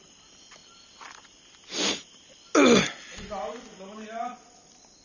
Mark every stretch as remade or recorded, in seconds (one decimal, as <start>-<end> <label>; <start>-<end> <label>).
0.0-5.0 recorded